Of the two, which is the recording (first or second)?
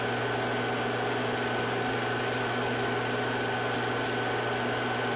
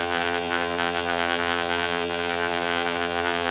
first